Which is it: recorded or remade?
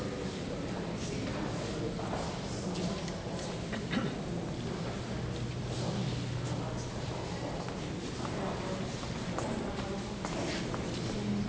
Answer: recorded